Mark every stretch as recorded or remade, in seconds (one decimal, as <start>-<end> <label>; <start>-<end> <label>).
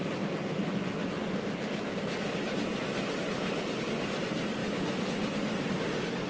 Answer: 0.0-6.3 recorded